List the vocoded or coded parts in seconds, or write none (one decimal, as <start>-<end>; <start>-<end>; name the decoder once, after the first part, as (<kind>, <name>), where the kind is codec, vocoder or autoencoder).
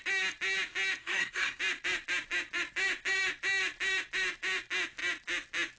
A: 1.0-1.6 (codec, SNAC)